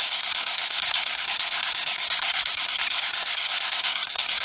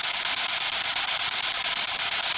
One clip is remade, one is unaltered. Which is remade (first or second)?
first